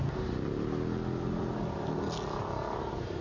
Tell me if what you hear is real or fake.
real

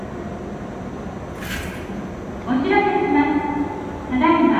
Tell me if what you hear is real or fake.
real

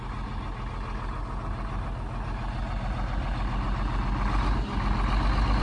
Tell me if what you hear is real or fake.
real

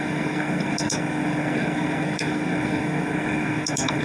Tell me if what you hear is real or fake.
fake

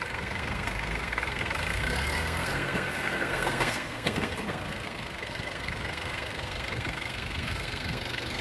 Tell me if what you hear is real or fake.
fake